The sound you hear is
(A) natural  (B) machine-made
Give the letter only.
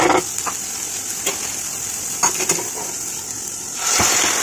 A